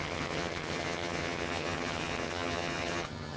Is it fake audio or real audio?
fake